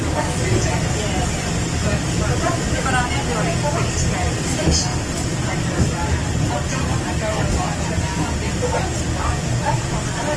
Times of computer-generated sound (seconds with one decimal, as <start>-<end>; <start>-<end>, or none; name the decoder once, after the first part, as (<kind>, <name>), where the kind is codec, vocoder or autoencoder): 1.8-2.6 (vocoder, BigVGAN v2); 4.9-6.2